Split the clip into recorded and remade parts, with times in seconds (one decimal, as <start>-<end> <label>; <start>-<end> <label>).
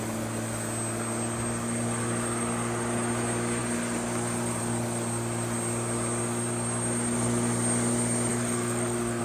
0.0-8.3 recorded; 8.3-9.2 remade